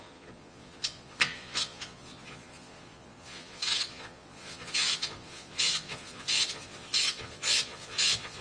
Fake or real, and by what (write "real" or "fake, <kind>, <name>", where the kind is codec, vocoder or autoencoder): fake, vocoder, Vocos